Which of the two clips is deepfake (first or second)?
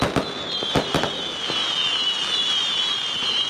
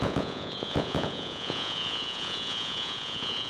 second